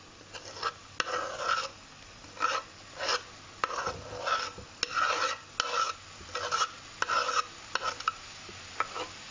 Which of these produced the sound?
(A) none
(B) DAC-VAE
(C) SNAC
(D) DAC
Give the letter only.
A